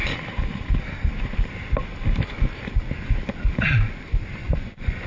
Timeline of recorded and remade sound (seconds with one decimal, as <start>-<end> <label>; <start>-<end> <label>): 0.0-4.4 recorded; 4.4-5.1 remade